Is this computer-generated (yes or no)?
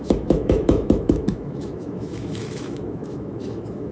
yes